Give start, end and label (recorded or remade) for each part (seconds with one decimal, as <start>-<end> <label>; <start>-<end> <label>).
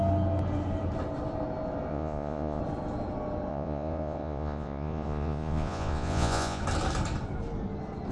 0.0-1.9 recorded; 1.9-2.6 remade; 2.6-3.5 recorded; 3.5-6.6 remade; 6.6-8.1 recorded